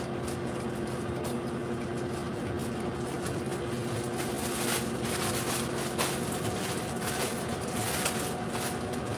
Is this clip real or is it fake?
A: real